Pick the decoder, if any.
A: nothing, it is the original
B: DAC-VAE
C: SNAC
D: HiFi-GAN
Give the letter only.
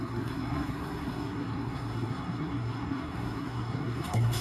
C